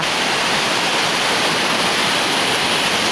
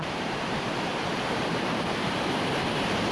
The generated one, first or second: second